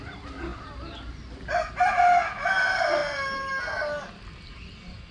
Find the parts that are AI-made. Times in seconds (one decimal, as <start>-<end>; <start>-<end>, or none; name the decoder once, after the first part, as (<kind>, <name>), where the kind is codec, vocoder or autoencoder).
none